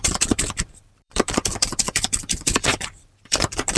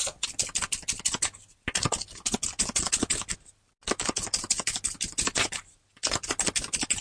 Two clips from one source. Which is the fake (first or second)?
first